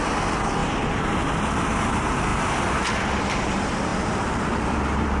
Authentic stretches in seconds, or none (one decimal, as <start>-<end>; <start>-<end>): 0.0-3.9; 4.7-5.2